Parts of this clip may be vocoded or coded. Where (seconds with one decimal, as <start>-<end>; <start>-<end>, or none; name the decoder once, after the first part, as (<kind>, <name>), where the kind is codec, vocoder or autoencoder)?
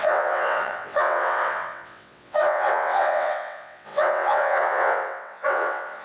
0.0-6.0 (vocoder, WaveNeXt)